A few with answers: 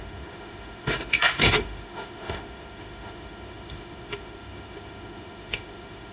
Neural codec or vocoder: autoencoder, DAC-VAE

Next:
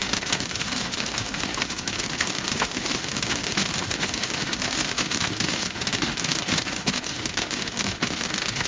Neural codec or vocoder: autoencoder, DAC-VAE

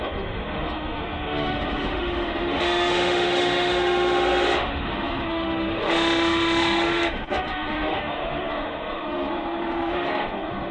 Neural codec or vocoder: autoencoder, DAC-VAE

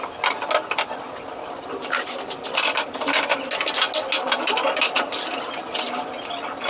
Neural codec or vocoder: none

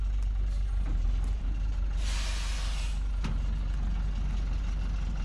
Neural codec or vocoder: none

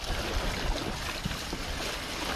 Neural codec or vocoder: none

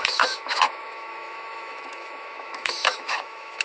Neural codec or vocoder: autoencoder, DAC-VAE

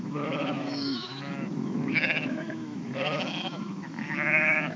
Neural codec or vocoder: autoencoder, DAC-VAE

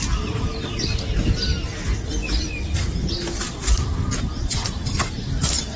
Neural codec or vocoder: none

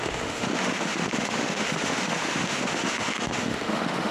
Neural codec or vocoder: autoencoder, DAC-VAE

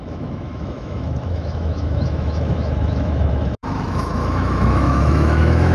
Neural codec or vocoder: autoencoder, DAC-VAE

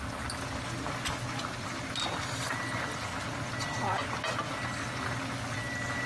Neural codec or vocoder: none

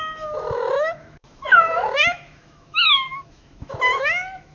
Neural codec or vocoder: autoencoder, DAC-VAE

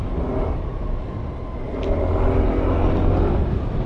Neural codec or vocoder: none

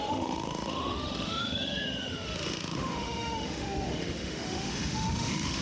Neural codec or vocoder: autoencoder, DAC-VAE